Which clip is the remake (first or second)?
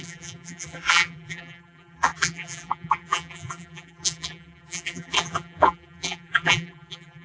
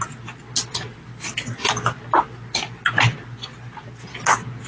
first